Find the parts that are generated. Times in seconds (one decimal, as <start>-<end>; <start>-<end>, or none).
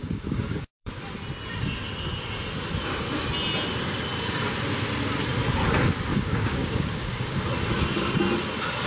0.0-1.0; 6.1-7.5